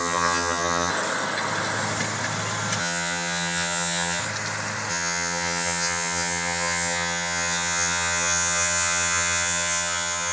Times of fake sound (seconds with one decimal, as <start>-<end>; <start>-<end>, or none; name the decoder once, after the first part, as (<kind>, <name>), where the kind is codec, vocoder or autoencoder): 0.0-0.9 (vocoder, HiFi-GAN); 2.8-4.2; 4.9-10.3